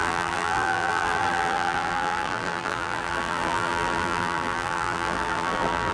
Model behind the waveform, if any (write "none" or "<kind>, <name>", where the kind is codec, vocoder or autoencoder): vocoder, BigVGAN v2